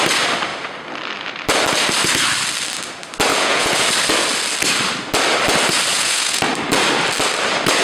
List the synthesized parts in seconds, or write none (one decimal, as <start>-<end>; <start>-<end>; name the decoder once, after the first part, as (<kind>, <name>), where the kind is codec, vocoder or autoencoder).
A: 3.3-3.9 (vocoder, Vocos); 5.9-6.4